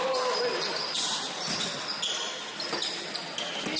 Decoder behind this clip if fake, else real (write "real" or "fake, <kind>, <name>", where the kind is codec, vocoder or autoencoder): real